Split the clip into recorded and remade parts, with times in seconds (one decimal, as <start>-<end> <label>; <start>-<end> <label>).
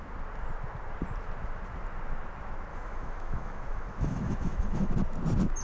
0.0-2.7 recorded; 2.7-4.9 remade; 4.9-5.6 recorded